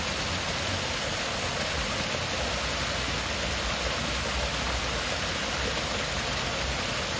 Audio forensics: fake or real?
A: real